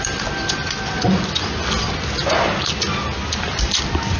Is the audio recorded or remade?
recorded